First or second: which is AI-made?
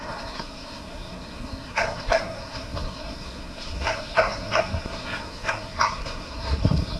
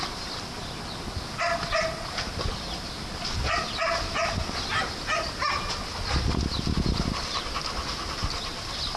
first